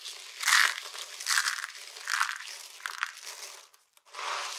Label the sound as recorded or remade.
recorded